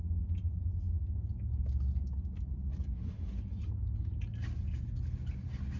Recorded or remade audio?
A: recorded